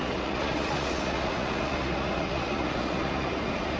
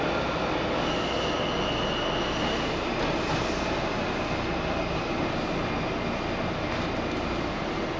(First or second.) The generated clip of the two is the first